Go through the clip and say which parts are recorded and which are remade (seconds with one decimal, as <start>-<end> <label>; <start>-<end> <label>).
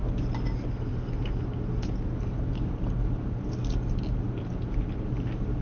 0.0-5.6 recorded